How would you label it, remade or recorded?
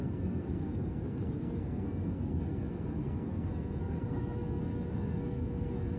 remade